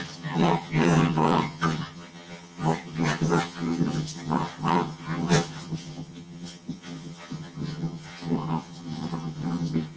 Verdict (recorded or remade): remade